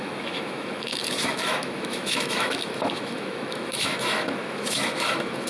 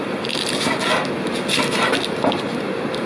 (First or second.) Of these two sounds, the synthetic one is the first